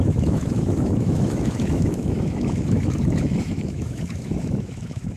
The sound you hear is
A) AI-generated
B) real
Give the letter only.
A